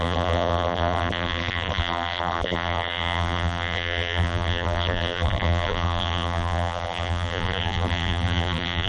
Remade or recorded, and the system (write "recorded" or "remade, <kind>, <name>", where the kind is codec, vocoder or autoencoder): remade, vocoder, BigVGAN v2